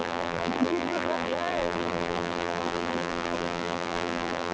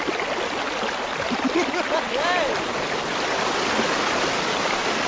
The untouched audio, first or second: second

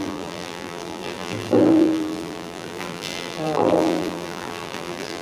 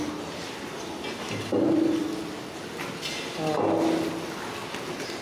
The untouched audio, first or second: second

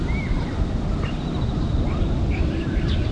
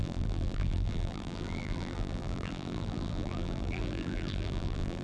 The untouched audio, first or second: first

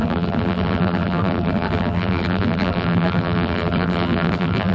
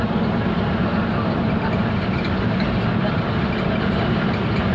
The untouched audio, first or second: second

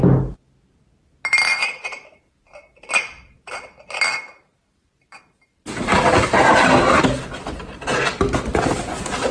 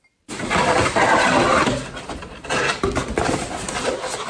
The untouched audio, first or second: first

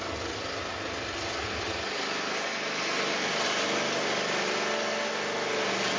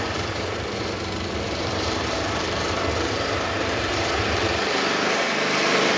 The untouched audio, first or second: first